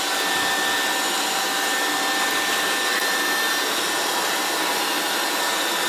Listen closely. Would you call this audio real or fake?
real